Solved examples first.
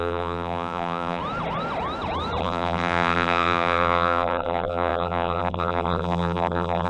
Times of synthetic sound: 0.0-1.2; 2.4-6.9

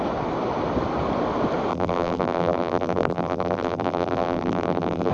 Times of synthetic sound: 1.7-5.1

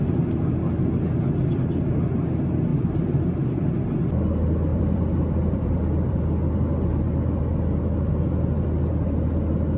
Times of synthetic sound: 2.7-3.7; 4.7-6.2

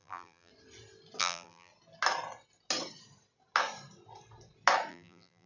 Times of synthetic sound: 0.0-0.5; 1.2-1.7; 4.9-5.5

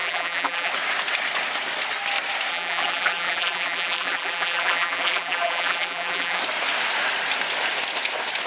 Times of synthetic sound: 0.0-0.7; 2.5-6.4

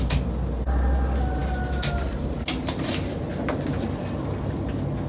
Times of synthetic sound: none

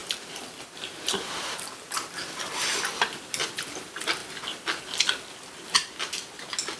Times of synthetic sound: 0.0-3.6

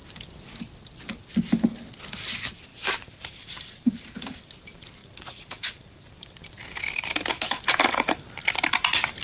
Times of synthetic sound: 2.7-4.5; 5.0-6.4; 7.3-9.2